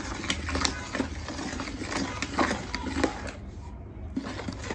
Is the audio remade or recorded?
recorded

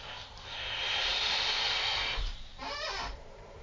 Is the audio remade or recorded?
remade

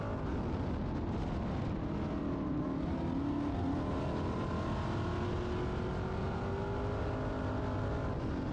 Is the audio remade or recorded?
recorded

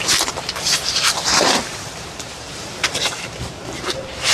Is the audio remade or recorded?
remade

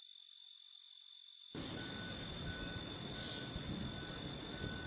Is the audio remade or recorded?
recorded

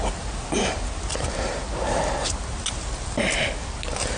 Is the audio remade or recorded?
recorded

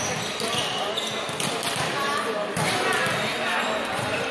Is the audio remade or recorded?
recorded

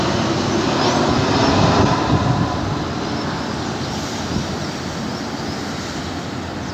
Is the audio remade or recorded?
recorded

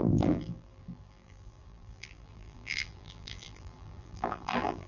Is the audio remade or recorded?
remade